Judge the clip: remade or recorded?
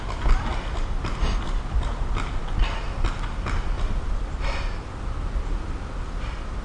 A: recorded